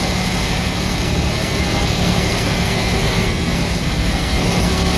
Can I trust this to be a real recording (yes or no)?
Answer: no